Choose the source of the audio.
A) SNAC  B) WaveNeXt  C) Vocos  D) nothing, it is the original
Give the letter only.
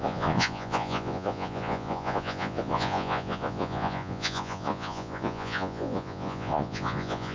C